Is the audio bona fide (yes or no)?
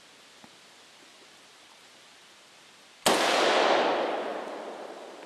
yes